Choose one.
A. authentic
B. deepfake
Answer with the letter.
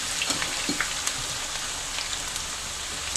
A